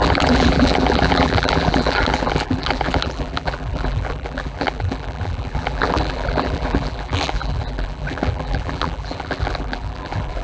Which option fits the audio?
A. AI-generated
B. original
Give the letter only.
A